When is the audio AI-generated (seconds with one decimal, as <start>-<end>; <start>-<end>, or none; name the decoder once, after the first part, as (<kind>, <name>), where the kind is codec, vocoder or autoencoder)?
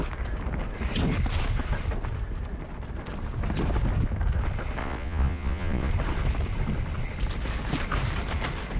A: 4.8-5.9 (vocoder, Vocos)